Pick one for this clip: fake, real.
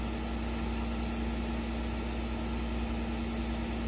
real